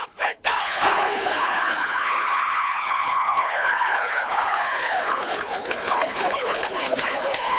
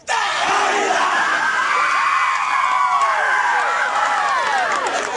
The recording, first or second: second